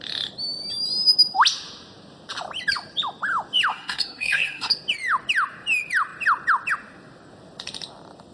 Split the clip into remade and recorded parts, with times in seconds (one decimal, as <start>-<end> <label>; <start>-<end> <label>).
0.0-3.7 recorded; 3.7-4.7 remade; 4.7-8.3 recorded